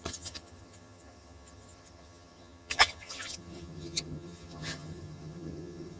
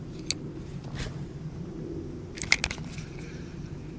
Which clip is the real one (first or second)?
second